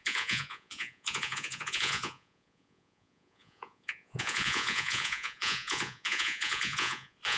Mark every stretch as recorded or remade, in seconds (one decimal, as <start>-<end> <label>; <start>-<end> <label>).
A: 0.0-7.4 remade